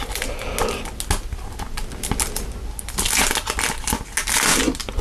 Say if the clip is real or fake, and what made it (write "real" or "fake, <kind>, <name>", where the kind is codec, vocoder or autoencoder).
real